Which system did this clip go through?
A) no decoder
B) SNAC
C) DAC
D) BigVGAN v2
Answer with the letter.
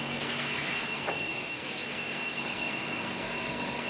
B